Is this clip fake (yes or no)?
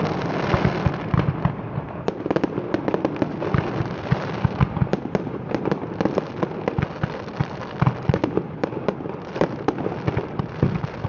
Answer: no